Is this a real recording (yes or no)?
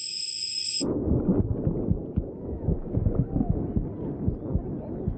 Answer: yes